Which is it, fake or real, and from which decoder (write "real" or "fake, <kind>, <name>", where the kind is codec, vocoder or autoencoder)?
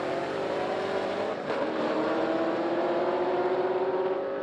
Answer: fake, vocoder, BigVGAN v2